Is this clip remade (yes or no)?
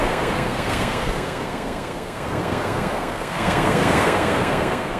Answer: yes